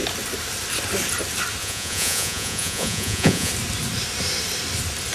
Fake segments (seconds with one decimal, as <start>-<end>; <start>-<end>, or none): 1.6-3.5